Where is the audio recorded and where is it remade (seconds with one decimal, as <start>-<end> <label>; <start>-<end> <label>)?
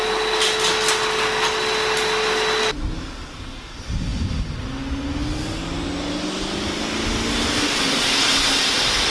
0.0-9.1 recorded